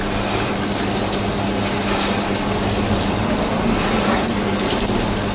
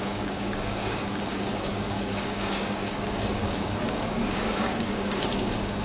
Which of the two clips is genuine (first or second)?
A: first